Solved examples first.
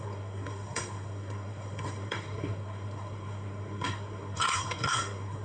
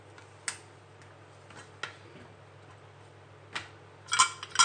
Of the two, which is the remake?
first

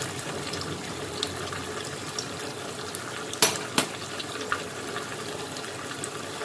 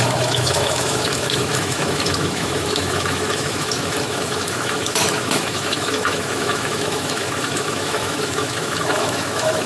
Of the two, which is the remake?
second